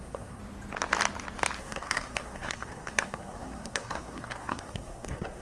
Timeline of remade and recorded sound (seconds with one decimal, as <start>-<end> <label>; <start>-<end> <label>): 0.0-0.4 remade; 0.4-1.6 recorded; 1.6-5.4 remade